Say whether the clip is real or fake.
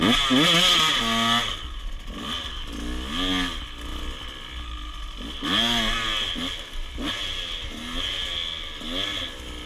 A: real